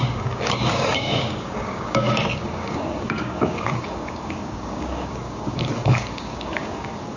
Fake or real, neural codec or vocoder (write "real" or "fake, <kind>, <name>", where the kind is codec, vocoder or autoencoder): fake, codec, DAC